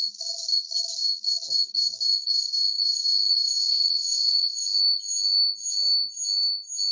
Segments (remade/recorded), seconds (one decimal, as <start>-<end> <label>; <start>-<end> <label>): 0.0-3.6 recorded; 3.6-4.6 remade; 4.6-6.9 recorded

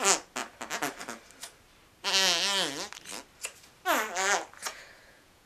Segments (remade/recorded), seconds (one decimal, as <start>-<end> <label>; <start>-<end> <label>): 0.0-4.6 recorded; 4.6-5.5 remade

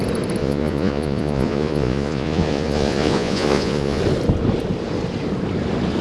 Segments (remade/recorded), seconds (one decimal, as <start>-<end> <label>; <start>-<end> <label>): 0.0-0.4 recorded; 0.4-4.0 remade; 4.0-6.0 recorded

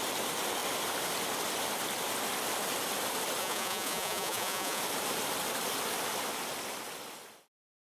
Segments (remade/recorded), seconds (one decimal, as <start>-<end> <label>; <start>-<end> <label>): 0.0-3.4 recorded; 3.4-4.8 remade; 4.8-8.0 recorded

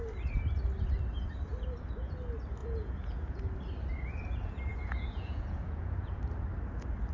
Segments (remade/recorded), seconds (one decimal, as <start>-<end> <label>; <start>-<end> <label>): 0.0-2.6 recorded; 2.6-3.4 remade; 3.4-4.7 recorded; 4.7-6.2 remade; 6.2-7.1 recorded

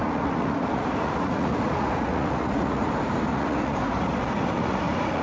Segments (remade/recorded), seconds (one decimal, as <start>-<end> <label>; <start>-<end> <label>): 0.0-2.9 remade; 2.9-3.3 recorded; 3.3-5.2 remade

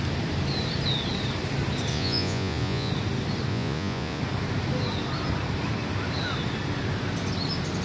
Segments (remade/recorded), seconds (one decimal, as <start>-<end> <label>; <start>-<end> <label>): 0.0-1.9 recorded; 1.9-2.9 remade; 2.9-3.5 recorded; 3.5-4.2 remade; 4.2-7.8 recorded